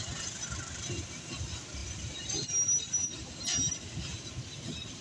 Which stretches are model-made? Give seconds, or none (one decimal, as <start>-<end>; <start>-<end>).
none